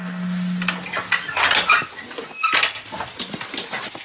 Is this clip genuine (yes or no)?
yes